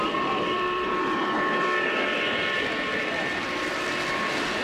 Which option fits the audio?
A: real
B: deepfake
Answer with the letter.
B